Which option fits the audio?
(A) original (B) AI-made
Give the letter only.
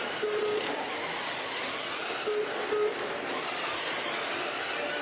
A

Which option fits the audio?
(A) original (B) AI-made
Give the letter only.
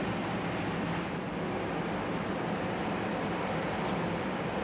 A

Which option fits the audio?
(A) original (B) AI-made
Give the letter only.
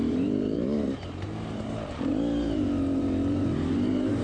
B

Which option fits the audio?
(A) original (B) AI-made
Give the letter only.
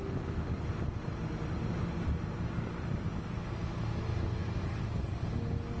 A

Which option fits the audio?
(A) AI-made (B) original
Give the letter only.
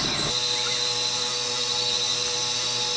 B